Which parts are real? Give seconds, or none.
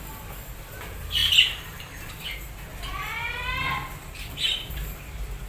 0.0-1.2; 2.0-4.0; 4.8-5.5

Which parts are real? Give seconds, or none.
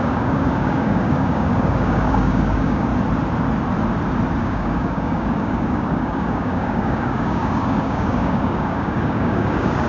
2.9-4.4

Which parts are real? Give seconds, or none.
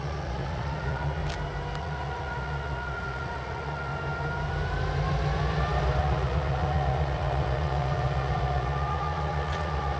1.2-1.8; 3.9-6.0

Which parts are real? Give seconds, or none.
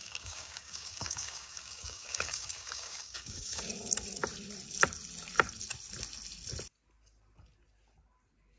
3.7-8.6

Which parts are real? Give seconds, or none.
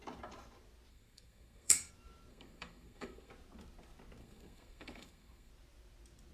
0.0-0.9; 1.9-2.3; 3.3-4.2; 5.5-6.3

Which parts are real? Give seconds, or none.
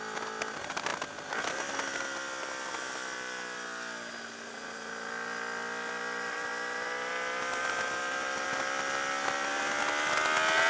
0.0-10.7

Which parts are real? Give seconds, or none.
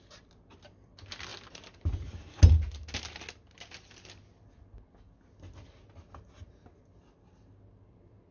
0.0-8.3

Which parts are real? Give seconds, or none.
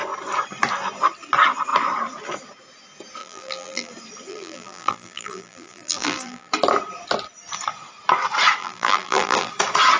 0.0-3.2; 3.9-4.3; 6.5-8.6; 9.5-10.0